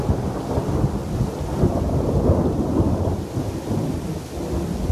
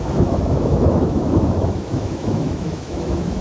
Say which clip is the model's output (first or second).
second